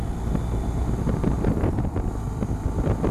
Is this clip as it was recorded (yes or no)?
yes